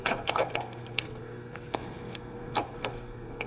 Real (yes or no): no